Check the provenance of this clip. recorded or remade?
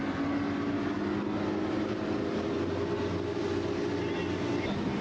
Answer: recorded